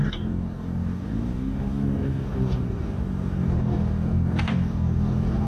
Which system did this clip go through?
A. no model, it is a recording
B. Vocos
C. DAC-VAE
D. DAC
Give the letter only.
D